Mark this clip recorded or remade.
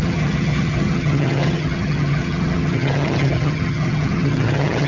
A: remade